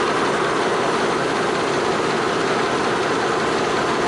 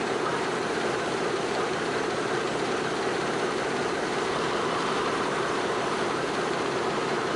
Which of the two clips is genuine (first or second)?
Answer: first